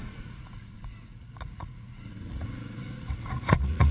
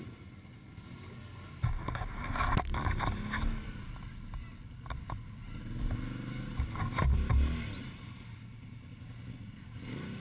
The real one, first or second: second